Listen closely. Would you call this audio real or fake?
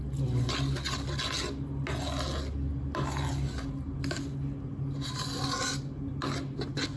real